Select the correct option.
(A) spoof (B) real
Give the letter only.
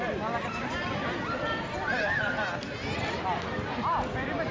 B